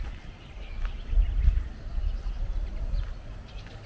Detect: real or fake real